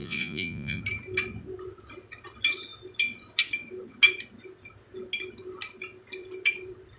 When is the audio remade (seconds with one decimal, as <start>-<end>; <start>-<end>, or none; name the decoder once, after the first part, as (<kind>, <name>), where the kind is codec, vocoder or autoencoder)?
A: 0.0-0.8 (vocoder, Vocos)

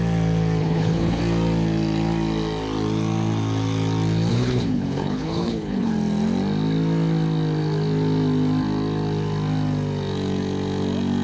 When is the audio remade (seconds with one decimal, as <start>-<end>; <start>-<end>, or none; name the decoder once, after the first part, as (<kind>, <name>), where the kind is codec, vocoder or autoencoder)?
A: 0.6-1.2 (codec, HILCodec); 4.3-5.9

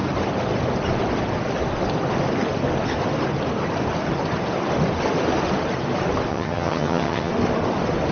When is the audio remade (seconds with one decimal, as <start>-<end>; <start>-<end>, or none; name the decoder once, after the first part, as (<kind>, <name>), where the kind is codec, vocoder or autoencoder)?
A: 6.3-7.3 (vocoder, HiFi-GAN)